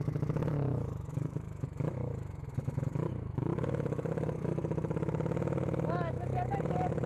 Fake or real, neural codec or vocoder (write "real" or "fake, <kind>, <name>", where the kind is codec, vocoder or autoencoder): fake, autoencoder, DAC-VAE